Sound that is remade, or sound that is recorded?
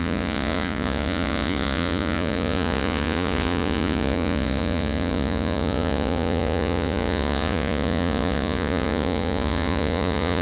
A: remade